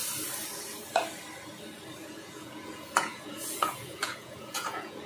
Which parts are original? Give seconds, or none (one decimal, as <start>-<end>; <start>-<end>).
0.0-2.0